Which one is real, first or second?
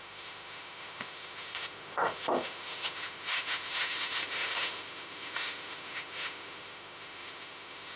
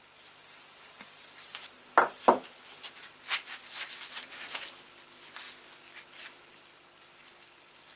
second